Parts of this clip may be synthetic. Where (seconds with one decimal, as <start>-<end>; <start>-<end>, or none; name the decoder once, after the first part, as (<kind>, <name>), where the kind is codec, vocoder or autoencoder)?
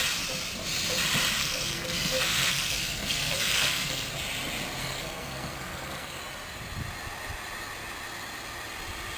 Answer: 1.4-4.1 (codec, SNAC); 4.8-6.2